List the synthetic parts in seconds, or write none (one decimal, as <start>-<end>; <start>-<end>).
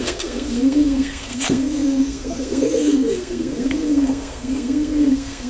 0.0-5.5